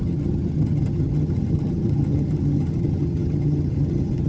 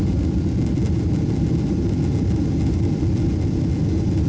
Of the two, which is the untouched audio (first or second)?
second